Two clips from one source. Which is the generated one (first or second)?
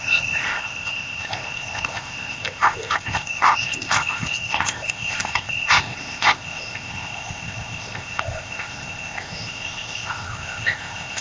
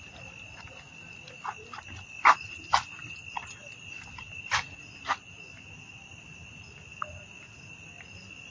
first